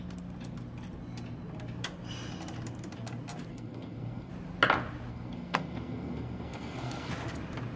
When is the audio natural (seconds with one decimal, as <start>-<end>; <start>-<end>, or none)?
0.0-3.5; 4.3-5.1; 7.1-7.8